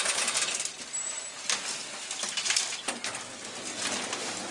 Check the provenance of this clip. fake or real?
real